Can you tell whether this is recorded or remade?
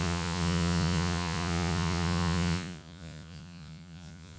remade